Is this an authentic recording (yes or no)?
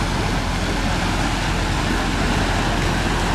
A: yes